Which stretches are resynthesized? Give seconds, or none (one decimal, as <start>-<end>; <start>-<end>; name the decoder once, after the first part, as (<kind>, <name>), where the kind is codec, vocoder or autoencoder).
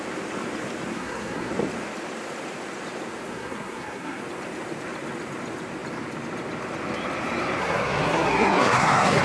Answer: 0.9-1.5 (codec, SNAC); 3.3-4.2; 7.6-9.2